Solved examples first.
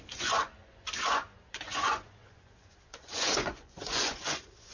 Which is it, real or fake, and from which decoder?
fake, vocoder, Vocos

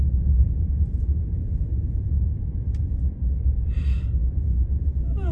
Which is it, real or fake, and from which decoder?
fake, vocoder, BigVGAN v2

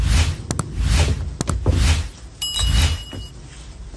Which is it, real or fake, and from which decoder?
real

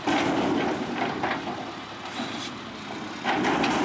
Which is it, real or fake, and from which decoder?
real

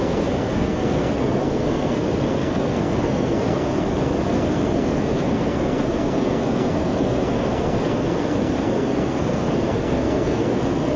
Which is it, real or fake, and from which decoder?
fake, codec, SNAC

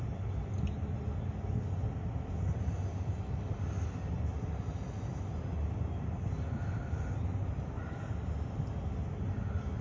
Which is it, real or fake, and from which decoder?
real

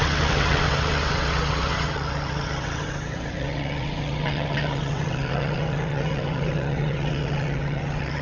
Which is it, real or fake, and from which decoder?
fake, vocoder, WaveNeXt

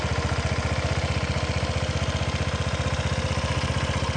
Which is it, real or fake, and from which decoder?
real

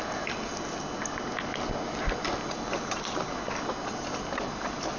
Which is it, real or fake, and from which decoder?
real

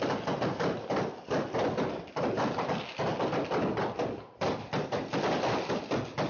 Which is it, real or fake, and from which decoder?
real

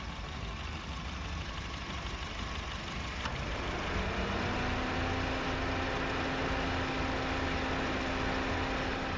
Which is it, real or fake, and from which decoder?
real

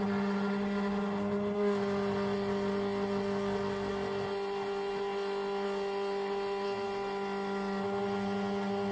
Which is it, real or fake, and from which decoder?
real